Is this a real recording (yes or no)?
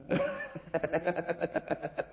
no